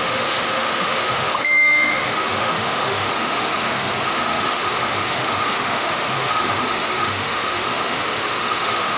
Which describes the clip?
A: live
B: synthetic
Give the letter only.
B